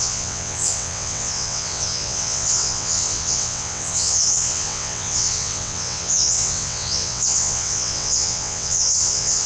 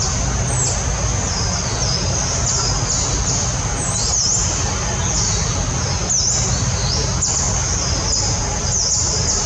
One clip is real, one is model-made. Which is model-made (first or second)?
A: first